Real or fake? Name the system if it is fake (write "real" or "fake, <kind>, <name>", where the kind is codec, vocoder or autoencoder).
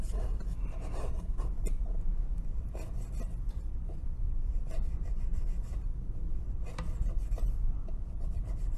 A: fake, vocoder, BigVGAN v2